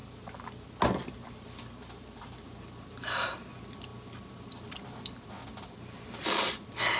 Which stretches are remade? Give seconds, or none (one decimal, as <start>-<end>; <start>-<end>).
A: none